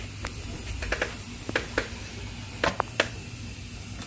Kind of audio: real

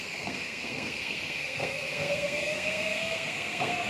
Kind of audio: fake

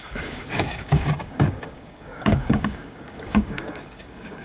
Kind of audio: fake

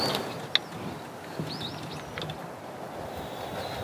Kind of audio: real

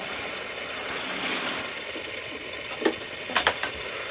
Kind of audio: real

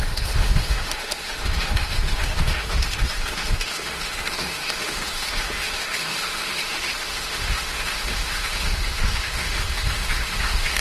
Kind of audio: fake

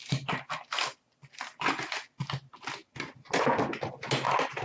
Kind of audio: real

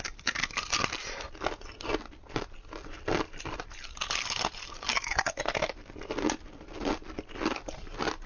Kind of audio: real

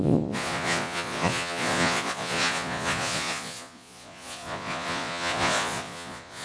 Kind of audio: fake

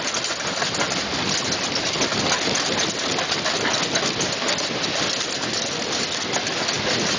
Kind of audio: real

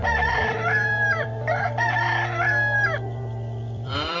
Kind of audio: fake